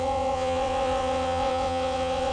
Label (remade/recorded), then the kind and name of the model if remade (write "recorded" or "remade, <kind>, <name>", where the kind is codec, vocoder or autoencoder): remade, vocoder, WaveNeXt